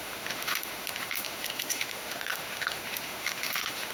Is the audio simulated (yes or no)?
yes